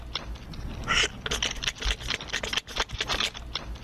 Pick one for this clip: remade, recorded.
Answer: recorded